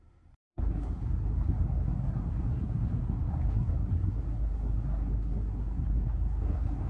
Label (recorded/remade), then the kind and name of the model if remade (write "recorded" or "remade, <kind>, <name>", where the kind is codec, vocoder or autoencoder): remade, codec, SNAC